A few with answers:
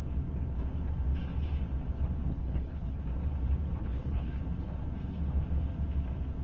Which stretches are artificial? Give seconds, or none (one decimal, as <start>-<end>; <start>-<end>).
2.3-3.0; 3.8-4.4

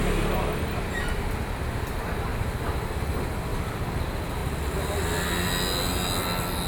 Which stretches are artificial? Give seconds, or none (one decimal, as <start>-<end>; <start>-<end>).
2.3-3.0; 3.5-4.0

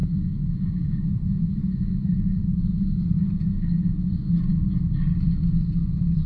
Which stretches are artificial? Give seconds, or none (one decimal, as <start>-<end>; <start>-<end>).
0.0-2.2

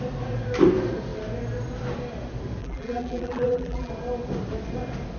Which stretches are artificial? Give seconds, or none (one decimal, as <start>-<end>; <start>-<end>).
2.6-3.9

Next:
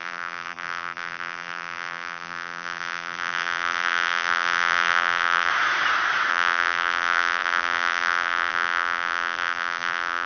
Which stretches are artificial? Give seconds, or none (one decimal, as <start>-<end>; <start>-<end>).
0.0-5.5; 6.3-10.3

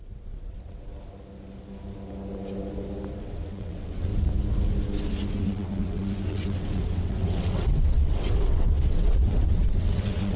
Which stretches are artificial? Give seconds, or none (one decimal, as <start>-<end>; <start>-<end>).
0.0-0.9; 3.2-4.1; 5.3-10.4